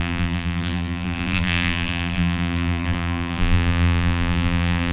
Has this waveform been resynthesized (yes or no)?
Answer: yes